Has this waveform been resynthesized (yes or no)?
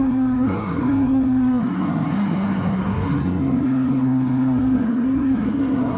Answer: yes